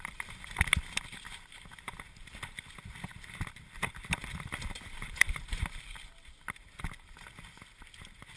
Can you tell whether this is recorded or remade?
recorded